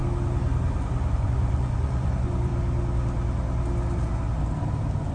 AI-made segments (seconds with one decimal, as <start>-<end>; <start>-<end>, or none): 1.1-2.5